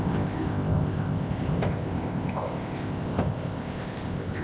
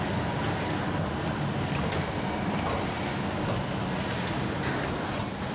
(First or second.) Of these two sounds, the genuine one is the second